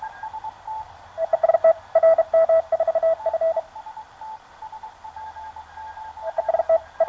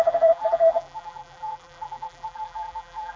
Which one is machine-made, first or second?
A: second